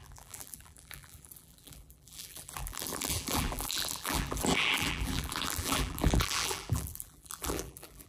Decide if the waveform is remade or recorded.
remade